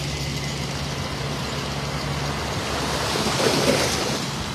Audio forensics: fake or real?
real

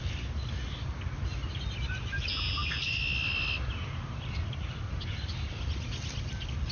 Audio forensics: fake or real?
real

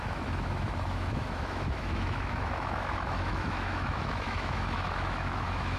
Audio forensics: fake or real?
fake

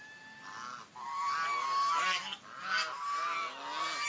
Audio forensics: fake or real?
real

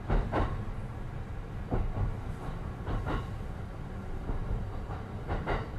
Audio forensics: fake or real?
real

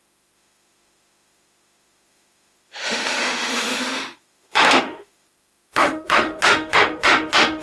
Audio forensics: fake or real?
fake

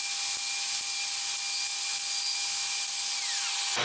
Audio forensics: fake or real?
real